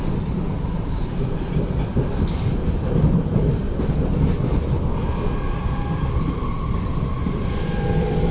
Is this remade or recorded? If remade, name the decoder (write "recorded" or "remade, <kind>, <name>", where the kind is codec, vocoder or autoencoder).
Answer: remade, vocoder, BigVGAN v2